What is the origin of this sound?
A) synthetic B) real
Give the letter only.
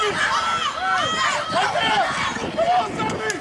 B